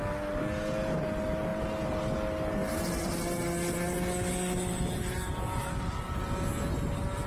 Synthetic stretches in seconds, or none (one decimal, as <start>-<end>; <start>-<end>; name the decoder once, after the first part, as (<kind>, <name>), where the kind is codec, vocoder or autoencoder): none